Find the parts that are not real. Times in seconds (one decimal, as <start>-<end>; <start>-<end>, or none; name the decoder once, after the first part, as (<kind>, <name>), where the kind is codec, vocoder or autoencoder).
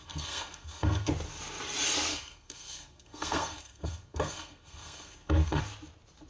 0.0-1.1 (codec, SNAC); 2.1-5.6